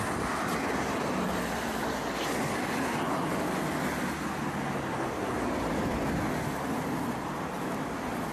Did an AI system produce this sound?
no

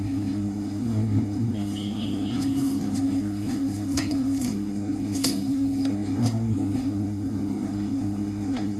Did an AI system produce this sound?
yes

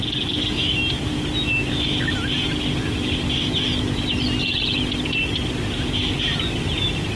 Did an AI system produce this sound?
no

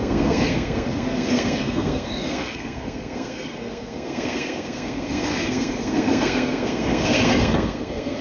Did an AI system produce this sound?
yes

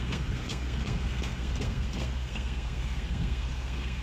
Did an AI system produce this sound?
yes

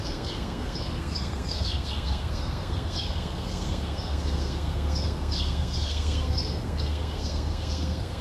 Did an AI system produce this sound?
yes